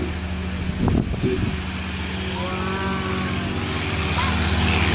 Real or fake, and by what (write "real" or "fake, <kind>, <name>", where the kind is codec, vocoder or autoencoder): real